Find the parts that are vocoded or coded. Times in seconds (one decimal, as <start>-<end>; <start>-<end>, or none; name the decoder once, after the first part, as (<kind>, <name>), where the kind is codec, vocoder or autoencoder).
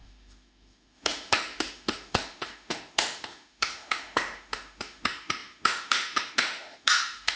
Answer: 0.0-7.4 (autoencoder, DAC-VAE)